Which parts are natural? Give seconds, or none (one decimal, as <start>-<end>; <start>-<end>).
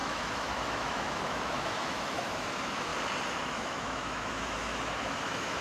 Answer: 2.9-3.5